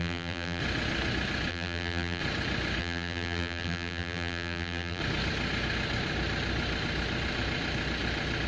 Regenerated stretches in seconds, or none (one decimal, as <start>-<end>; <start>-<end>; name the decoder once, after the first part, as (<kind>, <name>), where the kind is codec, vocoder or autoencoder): 0.0-0.6 (vocoder, BigVGAN v2); 1.5-2.2; 2.8-5.0